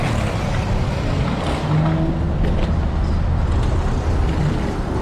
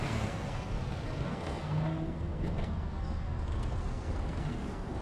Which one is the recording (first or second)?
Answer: first